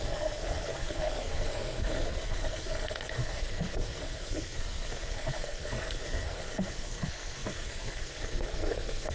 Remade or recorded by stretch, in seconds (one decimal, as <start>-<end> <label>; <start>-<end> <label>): 0.0-9.1 remade